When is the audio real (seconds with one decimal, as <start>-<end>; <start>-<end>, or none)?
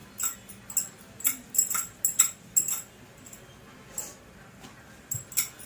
0.0-5.7